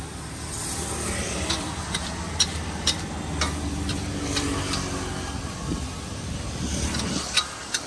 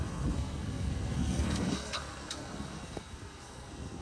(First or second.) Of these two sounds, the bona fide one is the first